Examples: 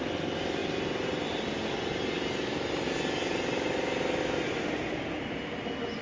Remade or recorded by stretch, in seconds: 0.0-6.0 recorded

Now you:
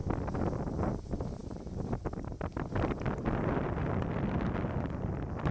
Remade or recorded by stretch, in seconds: 0.0-5.5 recorded

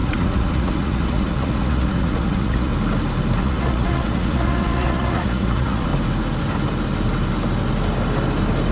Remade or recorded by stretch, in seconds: 0.0-2.7 remade; 2.7-3.4 recorded; 3.4-5.9 remade; 5.9-8.7 recorded

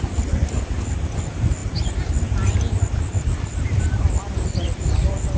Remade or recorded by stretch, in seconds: 0.0-5.4 recorded